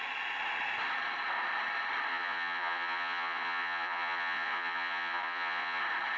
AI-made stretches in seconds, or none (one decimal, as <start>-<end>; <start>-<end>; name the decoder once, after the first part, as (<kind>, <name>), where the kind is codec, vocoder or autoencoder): 2.1-5.8 (vocoder, Vocos)